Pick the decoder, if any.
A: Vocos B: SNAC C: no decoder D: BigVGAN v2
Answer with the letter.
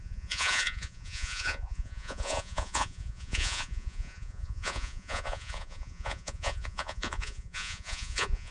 A